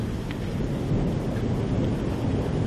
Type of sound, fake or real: real